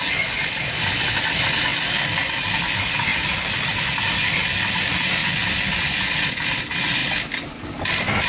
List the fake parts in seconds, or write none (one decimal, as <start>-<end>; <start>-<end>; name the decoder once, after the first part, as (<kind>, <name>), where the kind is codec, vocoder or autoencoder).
none